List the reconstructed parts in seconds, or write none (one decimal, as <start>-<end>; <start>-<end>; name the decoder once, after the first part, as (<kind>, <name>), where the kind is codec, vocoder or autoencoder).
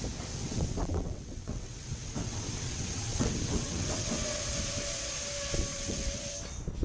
0.4-4.5 (vocoder, WaveNeXt); 5.7-6.3